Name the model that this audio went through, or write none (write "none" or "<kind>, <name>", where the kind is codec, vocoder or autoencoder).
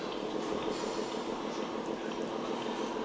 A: none